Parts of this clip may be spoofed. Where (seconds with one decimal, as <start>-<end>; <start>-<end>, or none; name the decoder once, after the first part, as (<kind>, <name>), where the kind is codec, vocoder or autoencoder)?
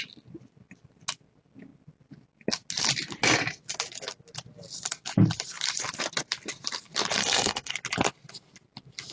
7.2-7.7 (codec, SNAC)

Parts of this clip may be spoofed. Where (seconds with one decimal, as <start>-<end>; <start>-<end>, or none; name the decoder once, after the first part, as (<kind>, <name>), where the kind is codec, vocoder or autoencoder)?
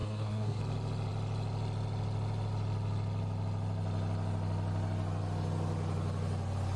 0.0-0.6 (codec, SNAC)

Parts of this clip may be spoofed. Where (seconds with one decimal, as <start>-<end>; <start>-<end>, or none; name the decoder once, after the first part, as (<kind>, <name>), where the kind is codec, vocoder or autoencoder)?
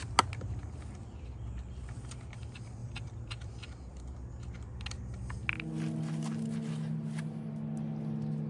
2.8-3.5 (vocoder, BigVGAN v2)